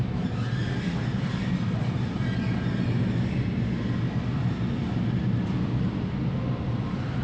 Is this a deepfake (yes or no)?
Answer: no